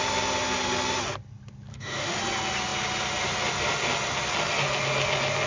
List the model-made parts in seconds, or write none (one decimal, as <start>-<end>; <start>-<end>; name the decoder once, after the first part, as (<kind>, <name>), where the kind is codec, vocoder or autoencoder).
1.7-2.2 (autoencoder, DAC-VAE)